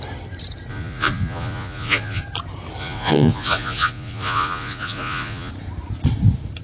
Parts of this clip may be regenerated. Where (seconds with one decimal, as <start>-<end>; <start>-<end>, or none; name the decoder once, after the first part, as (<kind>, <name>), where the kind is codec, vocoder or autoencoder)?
0.7-2.2 (vocoder, Vocos); 2.8-5.5